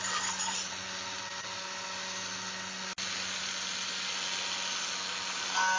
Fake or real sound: real